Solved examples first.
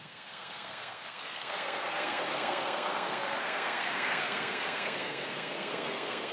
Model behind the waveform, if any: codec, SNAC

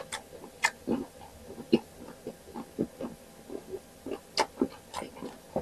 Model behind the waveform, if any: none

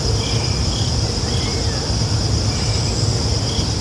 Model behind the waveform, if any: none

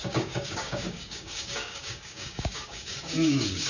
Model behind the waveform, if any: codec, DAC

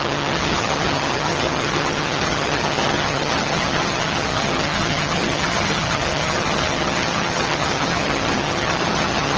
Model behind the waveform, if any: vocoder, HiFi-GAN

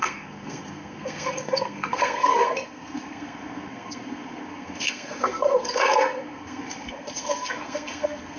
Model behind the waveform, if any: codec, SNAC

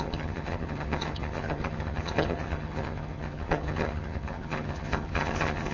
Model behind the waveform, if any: vocoder, HiFi-GAN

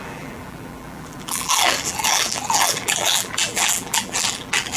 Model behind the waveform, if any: vocoder, BigVGAN v2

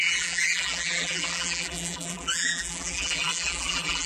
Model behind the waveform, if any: vocoder, BigVGAN v2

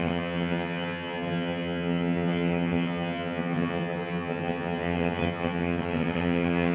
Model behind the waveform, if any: vocoder, HiFi-GAN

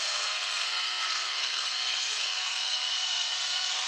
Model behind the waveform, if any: codec, SNAC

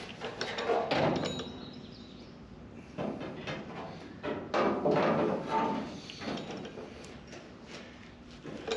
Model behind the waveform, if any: none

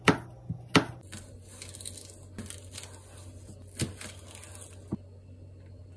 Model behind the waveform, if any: none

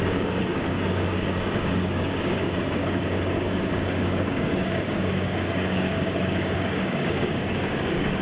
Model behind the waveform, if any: codec, DAC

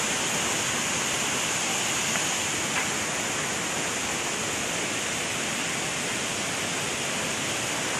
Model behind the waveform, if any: none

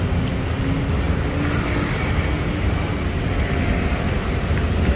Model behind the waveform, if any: none